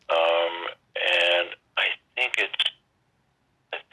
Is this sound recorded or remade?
recorded